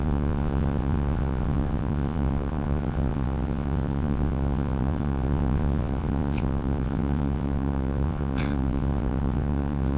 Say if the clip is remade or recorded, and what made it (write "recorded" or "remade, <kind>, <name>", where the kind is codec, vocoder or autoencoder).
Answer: remade, vocoder, WaveNeXt